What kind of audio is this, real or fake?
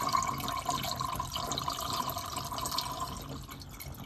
real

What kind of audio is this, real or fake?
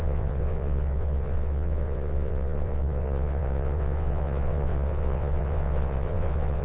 fake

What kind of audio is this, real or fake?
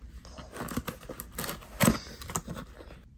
real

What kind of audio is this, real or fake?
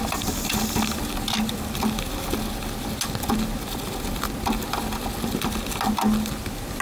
real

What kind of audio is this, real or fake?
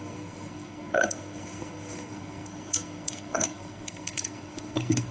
fake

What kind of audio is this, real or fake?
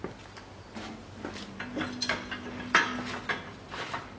real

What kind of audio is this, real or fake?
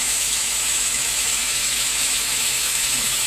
fake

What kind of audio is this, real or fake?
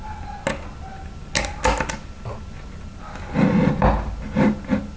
real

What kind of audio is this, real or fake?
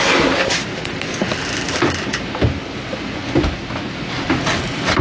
real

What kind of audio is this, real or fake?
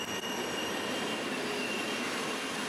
real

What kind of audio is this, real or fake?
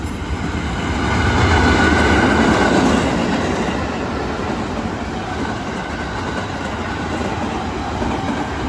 real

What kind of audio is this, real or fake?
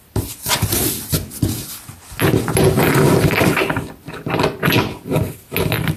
real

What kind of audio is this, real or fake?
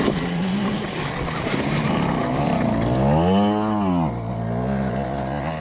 real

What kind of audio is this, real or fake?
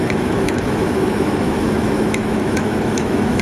fake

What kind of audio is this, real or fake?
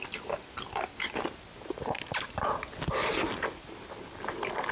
real